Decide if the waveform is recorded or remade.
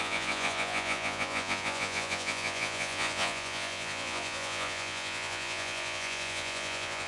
remade